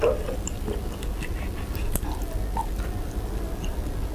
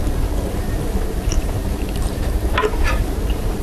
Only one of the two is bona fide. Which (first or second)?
first